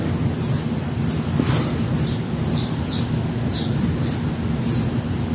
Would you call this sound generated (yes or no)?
no